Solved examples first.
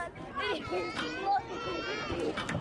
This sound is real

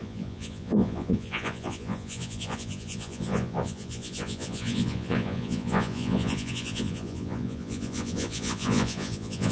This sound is fake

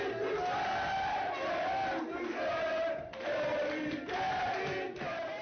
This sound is real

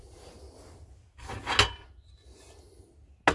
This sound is real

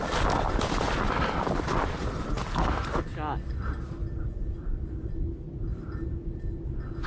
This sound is real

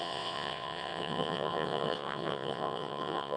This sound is fake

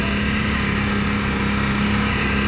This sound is real